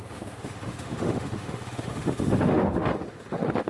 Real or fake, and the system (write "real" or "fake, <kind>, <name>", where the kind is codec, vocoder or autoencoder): fake, autoencoder, DAC-VAE